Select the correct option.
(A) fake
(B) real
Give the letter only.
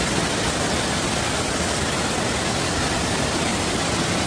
B